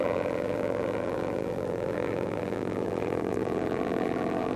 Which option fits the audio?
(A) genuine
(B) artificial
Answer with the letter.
B